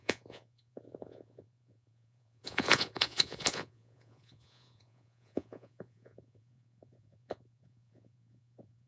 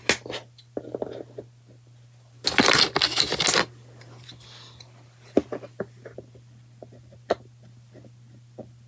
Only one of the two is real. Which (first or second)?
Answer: second